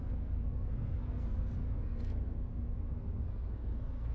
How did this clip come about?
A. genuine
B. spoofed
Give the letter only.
B